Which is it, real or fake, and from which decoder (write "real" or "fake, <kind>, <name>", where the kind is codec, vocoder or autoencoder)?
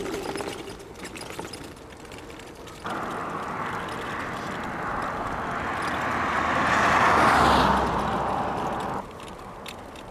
real